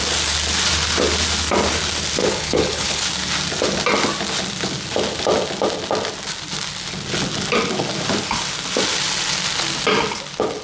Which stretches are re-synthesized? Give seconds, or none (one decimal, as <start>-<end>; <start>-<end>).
2.2-3.0